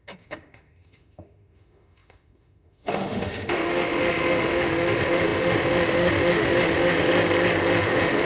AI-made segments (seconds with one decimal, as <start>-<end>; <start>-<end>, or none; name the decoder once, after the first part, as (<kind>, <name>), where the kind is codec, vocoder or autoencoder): 0.0-7.1 (autoencoder, DAC-VAE); 7.8-8.3